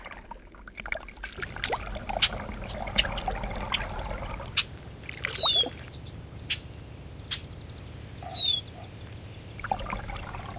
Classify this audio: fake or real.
real